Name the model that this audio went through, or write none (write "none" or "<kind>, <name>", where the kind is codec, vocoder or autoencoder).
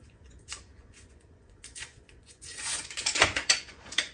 vocoder, Vocos